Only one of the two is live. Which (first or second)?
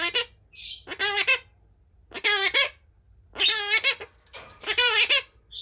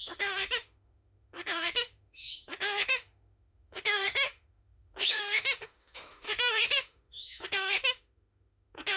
first